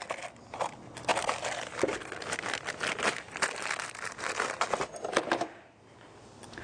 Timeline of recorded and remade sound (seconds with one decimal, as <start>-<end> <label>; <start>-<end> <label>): 0.0-6.6 recorded